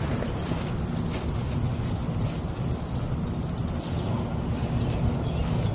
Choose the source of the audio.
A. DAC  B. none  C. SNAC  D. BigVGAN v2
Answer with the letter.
B